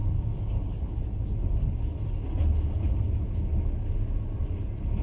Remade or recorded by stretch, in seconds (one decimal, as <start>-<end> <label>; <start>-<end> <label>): 0.0-0.8 remade; 0.8-5.0 recorded